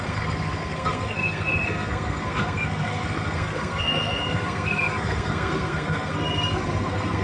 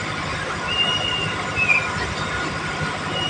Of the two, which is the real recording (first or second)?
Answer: second